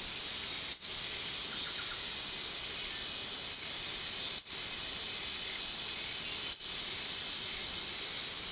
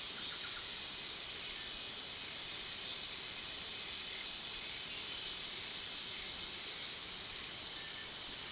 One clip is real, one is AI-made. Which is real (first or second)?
first